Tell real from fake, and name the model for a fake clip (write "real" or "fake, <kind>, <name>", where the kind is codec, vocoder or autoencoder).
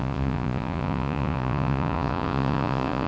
fake, vocoder, Vocos